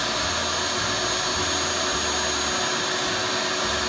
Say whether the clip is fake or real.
real